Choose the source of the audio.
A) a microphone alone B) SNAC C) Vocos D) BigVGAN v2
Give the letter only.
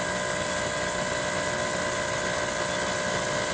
A